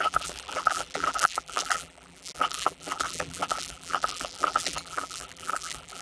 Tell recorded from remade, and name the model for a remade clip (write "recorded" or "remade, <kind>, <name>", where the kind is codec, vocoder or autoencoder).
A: remade, vocoder, BigVGAN v2